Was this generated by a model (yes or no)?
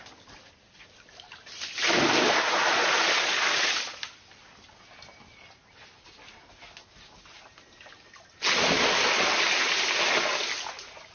no